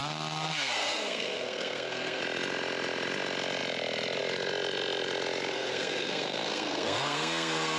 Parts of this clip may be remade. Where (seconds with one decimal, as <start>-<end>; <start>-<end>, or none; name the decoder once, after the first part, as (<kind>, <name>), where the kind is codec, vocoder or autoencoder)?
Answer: 0.0-2.2 (codec, SNAC); 5.5-7.8